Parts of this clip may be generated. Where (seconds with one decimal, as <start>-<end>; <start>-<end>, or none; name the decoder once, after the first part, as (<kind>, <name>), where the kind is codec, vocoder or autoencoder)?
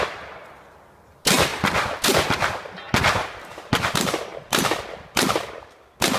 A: 1.5-2.5 (vocoder, BigVGAN v2)